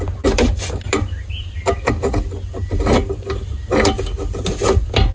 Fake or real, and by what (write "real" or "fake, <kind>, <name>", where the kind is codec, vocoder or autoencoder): real